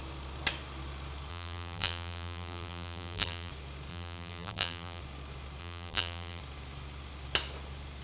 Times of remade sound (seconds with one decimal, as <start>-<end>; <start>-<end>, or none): 1.3-3.5; 3.9-5.0; 5.6-6.4